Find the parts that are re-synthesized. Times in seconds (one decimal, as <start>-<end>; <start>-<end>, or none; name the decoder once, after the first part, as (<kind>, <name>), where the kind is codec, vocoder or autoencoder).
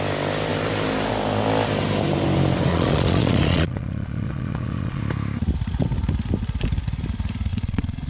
2.7-5.0 (vocoder, Vocos); 7.5-8.1